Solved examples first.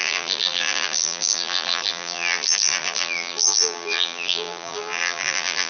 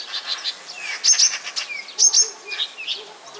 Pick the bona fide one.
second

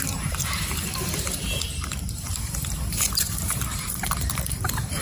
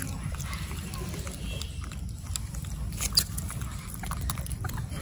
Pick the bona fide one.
second